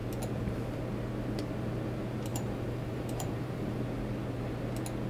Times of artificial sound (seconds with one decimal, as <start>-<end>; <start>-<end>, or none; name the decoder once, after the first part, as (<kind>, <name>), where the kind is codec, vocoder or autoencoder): 2.3-3.8 (vocoder, BigVGAN v2)